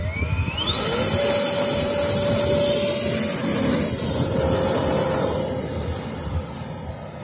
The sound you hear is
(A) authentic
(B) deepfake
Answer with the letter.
A